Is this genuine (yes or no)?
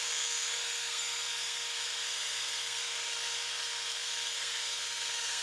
no